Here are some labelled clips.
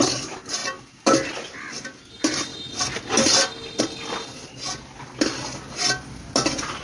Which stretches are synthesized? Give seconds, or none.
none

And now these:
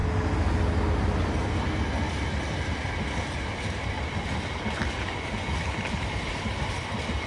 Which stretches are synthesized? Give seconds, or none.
none

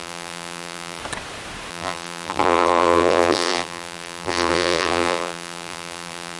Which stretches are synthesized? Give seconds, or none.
0.0-1.0 (vocoder, BigVGAN v2); 1.7-6.4

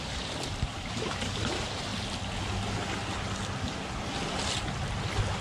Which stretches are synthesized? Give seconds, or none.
0.0-1.9 (vocoder, BigVGAN v2)

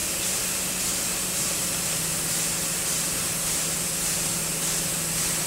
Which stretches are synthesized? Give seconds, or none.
0.0-0.7 (vocoder, BigVGAN v2)

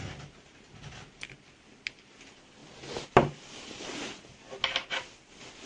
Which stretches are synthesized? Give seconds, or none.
none